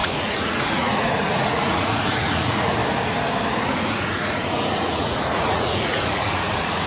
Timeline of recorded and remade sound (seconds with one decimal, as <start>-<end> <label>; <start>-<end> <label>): 0.0-2.8 remade; 2.8-3.6 recorded; 3.6-6.9 remade